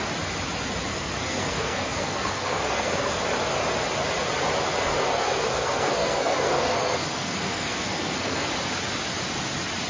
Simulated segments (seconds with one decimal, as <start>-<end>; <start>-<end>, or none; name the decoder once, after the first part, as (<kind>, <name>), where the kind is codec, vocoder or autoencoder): 0.9-3.2 (codec, SNAC); 5.1-8.5